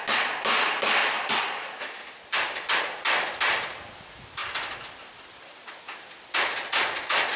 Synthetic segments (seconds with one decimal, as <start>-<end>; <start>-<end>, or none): 1.0-2.0